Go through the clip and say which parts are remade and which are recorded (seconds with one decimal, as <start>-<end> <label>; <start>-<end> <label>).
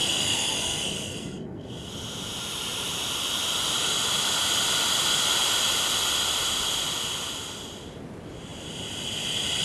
0.0-1.9 remade; 1.9-9.6 recorded